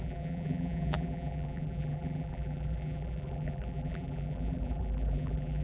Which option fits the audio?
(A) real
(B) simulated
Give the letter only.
B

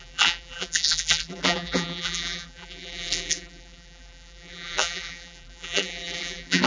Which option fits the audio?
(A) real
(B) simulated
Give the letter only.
B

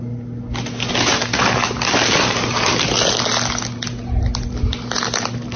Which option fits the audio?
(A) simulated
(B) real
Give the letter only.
B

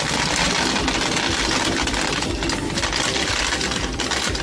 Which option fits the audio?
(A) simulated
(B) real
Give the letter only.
A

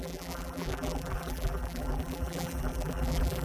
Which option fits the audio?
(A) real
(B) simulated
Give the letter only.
B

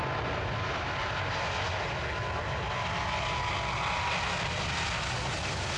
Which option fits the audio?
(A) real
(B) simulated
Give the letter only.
A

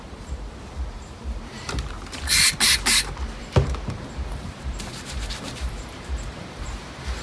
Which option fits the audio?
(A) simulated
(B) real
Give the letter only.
A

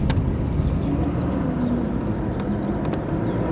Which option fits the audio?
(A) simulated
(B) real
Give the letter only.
B